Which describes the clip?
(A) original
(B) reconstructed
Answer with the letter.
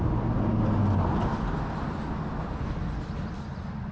A